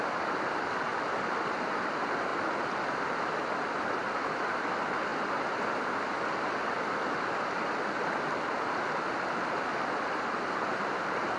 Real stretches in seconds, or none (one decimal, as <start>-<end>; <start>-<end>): 0.0-11.4